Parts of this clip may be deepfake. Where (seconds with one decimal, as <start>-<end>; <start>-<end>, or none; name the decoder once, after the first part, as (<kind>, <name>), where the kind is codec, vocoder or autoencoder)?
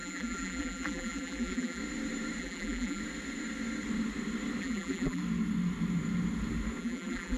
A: 0.0-1.8 (vocoder, BigVGAN v2); 2.4-3.0; 4.6-5.2; 6.8-7.4